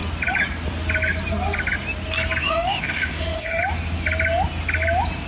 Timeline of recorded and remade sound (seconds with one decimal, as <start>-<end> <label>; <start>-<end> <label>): 0.0-2.4 recorded; 2.4-3.6 remade; 3.6-5.3 recorded